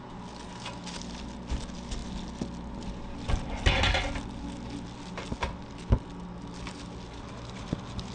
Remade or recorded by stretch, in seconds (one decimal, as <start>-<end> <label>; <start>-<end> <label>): 0.0-8.1 recorded